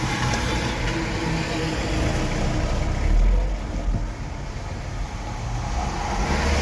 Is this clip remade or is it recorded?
recorded